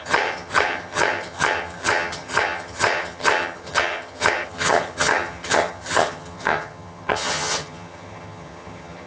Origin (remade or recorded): remade